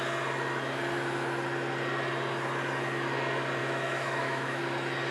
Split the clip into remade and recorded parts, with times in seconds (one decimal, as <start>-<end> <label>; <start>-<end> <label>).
0.0-3.6 recorded; 3.6-4.6 remade; 4.6-5.1 recorded